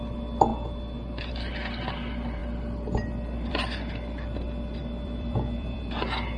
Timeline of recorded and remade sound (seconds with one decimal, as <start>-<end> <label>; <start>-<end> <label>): 0.0-4.8 recorded; 4.8-5.8 remade; 5.8-6.4 recorded